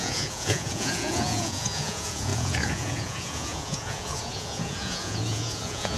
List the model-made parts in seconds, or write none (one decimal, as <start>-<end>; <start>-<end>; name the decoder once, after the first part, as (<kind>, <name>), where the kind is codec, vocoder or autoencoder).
0.0-6.0 (vocoder, Vocos)